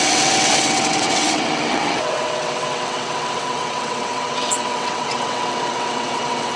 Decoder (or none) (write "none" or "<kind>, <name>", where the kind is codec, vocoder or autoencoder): vocoder, WaveNeXt